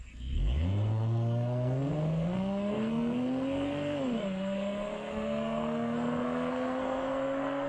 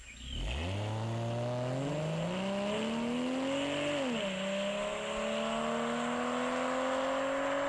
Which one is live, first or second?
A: second